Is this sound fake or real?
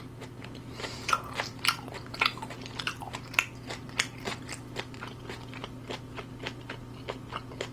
real